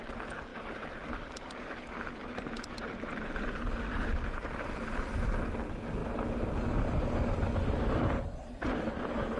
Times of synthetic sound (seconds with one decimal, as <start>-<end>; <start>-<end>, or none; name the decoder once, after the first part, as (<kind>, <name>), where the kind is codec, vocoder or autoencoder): 0.5-4.7 (vocoder, BigVGAN v2)

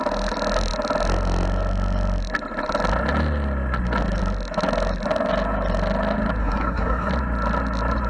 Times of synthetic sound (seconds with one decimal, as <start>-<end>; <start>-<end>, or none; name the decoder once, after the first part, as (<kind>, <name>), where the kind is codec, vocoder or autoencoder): 6.4-7.1 (codec, SNAC)

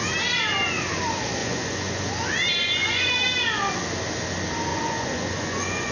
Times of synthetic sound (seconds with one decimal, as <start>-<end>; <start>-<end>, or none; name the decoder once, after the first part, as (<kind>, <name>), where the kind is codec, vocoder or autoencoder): 1.4-2.1 (vocoder, Vocos); 2.6-3.1; 4.7-5.9

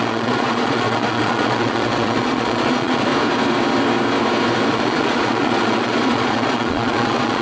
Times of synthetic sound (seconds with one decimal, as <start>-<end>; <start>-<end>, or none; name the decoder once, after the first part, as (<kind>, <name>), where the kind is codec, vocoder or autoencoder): 0.0-3.1 (vocoder, Vocos); 4.7-7.4

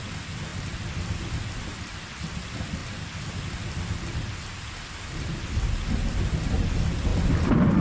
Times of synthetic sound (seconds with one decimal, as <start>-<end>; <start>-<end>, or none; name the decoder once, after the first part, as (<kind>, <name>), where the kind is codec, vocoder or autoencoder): 7.1-7.8 (vocoder, BigVGAN v2)

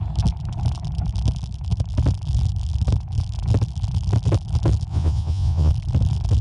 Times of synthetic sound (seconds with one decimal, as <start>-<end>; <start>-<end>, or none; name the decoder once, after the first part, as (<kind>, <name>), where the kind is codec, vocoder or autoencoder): 4.9-5.7 (vocoder, Vocos)